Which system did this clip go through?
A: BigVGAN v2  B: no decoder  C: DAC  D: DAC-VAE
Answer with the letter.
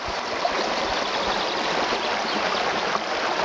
B